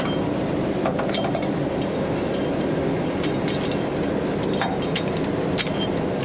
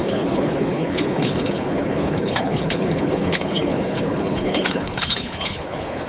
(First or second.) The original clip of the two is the first